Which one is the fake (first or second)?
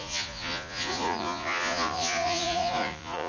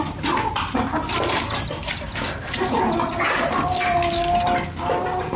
first